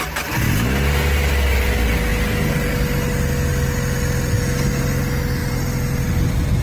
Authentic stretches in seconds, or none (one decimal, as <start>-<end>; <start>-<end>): 0.0-6.6

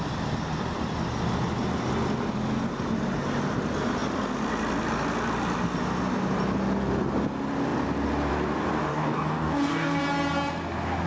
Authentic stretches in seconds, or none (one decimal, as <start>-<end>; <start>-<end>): 0.0-8.9; 10.0-11.1

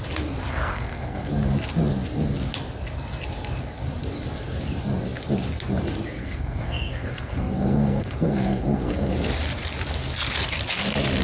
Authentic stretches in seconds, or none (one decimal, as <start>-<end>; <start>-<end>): 0.0-0.5; 1.3-6.2; 9.1-11.2

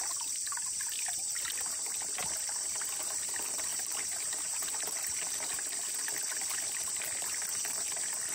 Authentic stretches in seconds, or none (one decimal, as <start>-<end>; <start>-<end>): 0.0-3.7; 5.6-8.3